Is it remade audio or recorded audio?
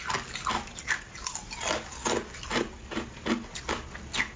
recorded